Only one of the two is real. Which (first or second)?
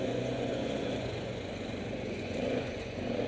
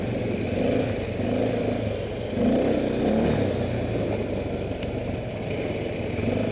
second